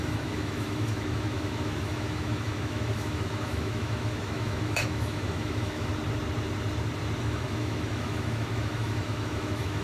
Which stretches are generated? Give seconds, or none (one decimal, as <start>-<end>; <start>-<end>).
0.0-5.9; 7.2-9.8